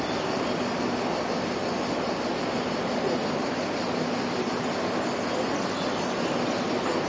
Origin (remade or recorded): recorded